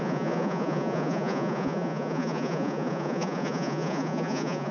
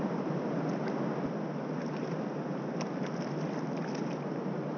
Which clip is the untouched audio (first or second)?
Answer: second